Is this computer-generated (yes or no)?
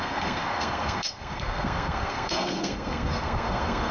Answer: yes